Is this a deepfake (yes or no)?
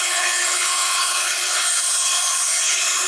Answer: yes